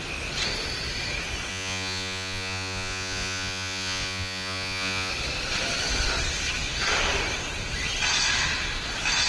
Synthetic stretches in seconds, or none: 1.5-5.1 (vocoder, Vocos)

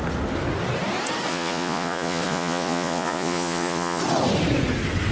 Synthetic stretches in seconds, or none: 1.3-4.0 (vocoder, Vocos)